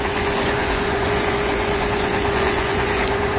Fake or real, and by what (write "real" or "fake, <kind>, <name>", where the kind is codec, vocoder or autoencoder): fake, vocoder, Vocos